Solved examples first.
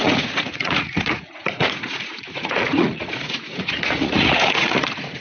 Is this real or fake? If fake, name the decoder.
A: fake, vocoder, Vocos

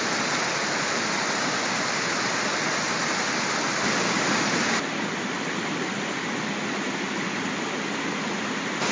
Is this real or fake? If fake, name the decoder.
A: real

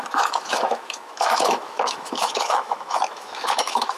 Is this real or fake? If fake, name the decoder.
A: fake, autoencoder, DAC-VAE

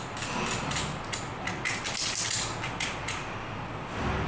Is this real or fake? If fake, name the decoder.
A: real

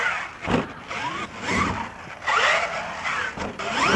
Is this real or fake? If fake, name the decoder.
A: real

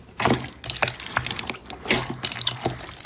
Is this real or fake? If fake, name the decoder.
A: real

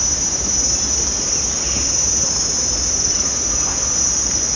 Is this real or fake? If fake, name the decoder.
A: real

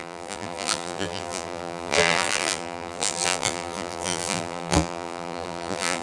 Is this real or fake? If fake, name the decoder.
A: fake, vocoder, BigVGAN v2